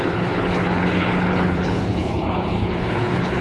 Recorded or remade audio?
remade